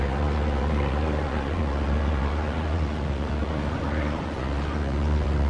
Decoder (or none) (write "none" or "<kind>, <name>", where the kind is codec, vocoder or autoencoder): vocoder, Vocos